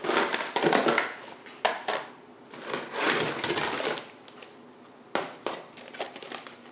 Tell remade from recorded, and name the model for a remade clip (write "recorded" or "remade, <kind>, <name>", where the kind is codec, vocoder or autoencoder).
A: recorded